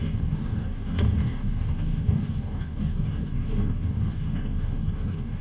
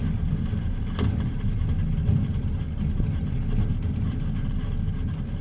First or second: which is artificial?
first